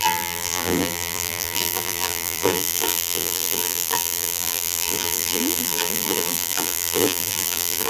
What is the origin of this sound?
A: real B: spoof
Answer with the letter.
B